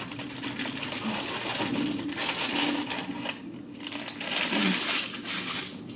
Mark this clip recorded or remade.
recorded